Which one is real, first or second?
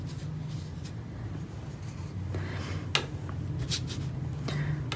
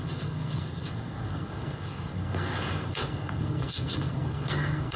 first